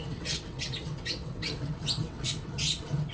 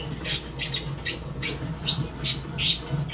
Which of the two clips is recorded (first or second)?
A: second